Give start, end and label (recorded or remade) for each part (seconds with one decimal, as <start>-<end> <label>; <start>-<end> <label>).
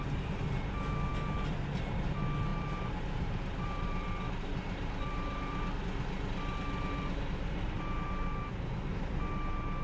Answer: 0.0-2.5 recorded; 2.5-5.8 remade; 5.8-9.8 recorded